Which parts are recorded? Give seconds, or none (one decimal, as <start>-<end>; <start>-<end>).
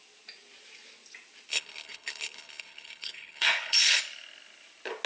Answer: 0.0-1.5; 4.0-5.1